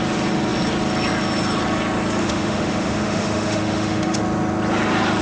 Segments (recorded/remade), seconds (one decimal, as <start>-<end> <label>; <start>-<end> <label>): 0.0-2.2 recorded; 2.2-4.2 remade; 4.2-5.2 recorded